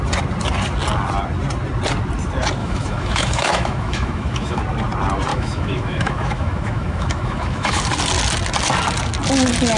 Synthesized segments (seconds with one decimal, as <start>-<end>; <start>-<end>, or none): 2.6-4.6; 5.3-7.8